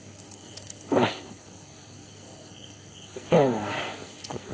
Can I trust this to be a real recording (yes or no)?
no